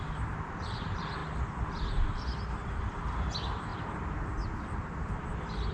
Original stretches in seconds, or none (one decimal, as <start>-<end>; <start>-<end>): 1.2-3.1